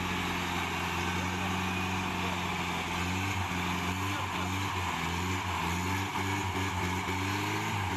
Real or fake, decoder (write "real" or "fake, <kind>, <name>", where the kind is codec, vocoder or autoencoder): real